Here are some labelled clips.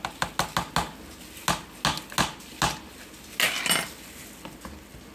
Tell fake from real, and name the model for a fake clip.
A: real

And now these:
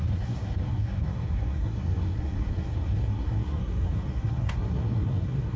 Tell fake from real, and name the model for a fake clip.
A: fake, codec, SNAC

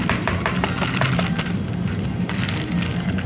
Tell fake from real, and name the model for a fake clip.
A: real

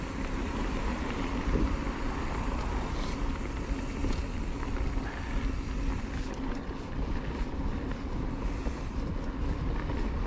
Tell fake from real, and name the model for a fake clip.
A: real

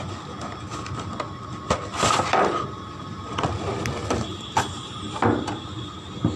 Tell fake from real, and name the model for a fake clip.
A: real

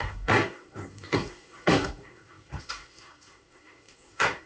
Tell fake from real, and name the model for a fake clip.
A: fake, codec, SNAC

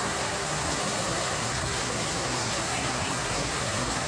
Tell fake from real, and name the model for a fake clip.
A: fake, codec, SNAC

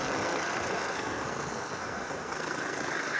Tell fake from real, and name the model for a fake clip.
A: fake, codec, SNAC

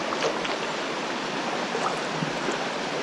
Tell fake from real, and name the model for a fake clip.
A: real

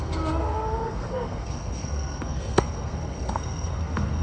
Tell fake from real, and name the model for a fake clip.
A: fake, codec, SNAC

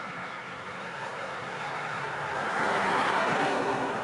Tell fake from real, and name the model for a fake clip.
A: fake, codec, SNAC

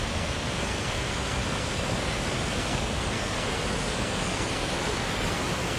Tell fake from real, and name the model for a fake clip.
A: fake, codec, SNAC